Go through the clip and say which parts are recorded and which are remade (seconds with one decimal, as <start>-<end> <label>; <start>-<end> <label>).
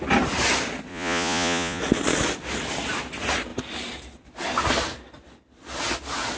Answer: 0.0-0.9 recorded; 0.9-1.8 remade; 1.8-6.4 recorded